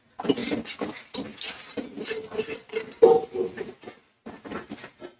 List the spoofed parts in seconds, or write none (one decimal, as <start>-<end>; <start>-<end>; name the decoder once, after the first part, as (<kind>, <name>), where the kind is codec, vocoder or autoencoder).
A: none